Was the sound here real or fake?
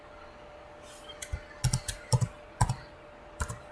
real